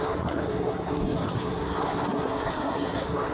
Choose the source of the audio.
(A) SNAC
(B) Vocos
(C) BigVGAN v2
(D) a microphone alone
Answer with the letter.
A